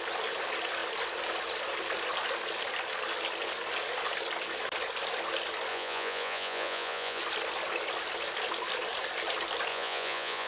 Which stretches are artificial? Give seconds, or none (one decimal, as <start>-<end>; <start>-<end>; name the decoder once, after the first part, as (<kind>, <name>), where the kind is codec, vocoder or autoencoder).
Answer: 5.7-7.2 (vocoder, Vocos); 9.7-10.5

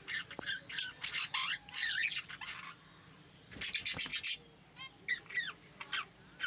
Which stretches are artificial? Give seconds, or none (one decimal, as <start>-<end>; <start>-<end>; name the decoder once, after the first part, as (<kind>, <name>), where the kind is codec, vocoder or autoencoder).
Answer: 1.4-2.3 (vocoder, Vocos)

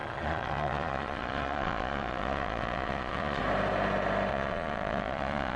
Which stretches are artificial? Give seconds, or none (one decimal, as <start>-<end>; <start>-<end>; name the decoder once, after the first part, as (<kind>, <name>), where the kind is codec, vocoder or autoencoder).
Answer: 0.0-3.4 (vocoder, Vocos); 4.3-5.6

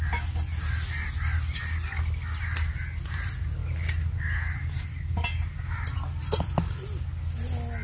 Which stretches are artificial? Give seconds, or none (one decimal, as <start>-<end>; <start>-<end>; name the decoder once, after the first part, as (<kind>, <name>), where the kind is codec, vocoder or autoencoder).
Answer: none

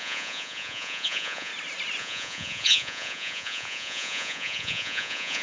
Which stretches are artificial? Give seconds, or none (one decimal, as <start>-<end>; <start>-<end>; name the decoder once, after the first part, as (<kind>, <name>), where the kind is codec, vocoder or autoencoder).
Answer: 0.0-1.5 (vocoder, Vocos); 2.0-5.4

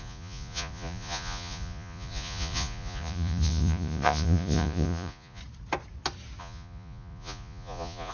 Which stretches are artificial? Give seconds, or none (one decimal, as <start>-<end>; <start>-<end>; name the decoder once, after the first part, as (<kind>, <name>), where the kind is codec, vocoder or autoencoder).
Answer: 0.0-5.4 (vocoder, Vocos); 6.4-8.1

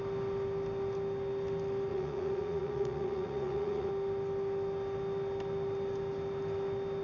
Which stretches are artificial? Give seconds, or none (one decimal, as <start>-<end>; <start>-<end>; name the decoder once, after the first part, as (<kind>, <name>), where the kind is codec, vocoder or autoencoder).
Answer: 1.9-3.9 (vocoder, Vocos)